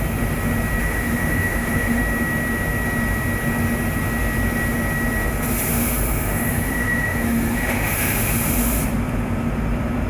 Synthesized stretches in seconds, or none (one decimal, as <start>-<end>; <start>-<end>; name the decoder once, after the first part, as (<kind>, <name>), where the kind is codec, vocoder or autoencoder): 0.8-2.0 (autoencoder, DAC-VAE); 5.7-8.7